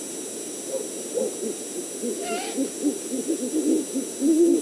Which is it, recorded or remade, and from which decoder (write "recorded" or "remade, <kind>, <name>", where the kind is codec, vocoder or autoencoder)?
recorded